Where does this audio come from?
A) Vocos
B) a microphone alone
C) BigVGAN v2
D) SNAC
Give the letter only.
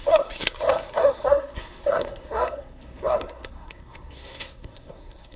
D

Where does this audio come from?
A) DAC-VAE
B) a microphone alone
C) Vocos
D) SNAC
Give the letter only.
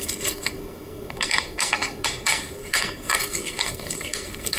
D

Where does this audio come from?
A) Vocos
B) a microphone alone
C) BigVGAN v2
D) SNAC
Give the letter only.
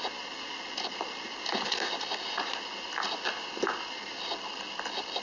B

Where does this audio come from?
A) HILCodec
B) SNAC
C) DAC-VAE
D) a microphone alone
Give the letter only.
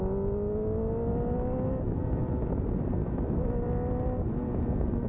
D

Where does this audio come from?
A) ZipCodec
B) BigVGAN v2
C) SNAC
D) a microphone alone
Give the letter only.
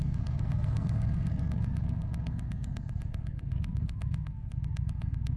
C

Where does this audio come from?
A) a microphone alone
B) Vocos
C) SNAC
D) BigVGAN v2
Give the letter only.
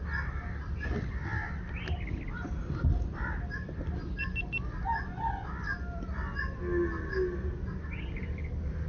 A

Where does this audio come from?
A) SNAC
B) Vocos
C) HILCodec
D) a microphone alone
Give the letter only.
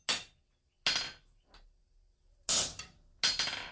D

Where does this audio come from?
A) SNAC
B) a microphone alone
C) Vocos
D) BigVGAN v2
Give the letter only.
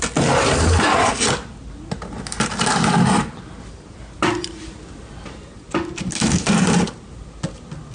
B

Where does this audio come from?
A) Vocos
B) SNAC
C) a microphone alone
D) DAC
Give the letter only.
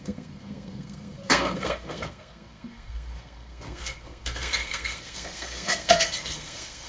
B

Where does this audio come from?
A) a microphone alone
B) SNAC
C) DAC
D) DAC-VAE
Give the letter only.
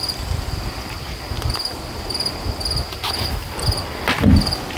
A